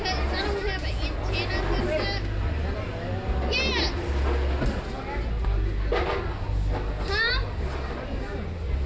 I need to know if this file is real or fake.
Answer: real